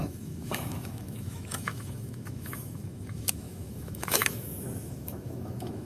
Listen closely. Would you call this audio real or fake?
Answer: fake